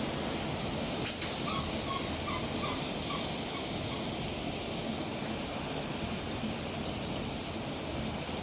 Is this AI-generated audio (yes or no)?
no